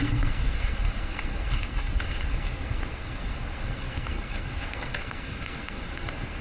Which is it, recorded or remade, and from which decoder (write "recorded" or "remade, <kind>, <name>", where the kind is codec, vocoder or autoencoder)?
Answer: remade, codec, SNAC